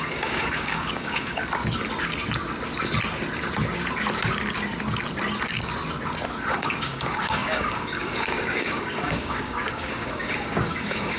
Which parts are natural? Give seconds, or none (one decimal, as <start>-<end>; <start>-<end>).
1.4-6.5